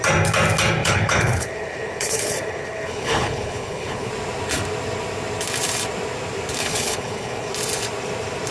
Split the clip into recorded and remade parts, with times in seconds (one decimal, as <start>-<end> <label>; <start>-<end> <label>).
0.0-0.8 recorded; 0.8-4.1 remade; 4.1-6.6 recorded; 6.6-7.5 remade; 7.5-8.5 recorded